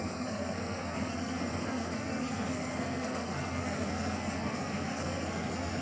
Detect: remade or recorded remade